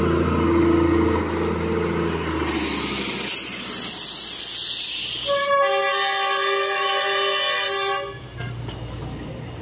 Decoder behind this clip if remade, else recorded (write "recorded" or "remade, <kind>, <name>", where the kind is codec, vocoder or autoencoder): recorded